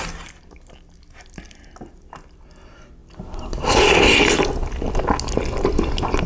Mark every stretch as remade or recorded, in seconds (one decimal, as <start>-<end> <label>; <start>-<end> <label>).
0.0-6.3 recorded